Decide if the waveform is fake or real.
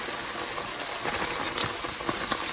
real